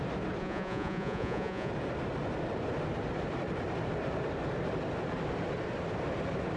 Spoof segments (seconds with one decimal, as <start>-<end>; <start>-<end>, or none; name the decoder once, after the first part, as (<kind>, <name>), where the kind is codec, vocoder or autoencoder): 0.4-1.7 (vocoder, Vocos)